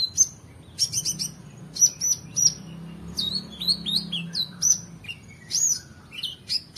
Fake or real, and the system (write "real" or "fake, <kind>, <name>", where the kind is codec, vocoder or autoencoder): real